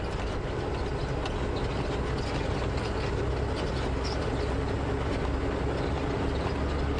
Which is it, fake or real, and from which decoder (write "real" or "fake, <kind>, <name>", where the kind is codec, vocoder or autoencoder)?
real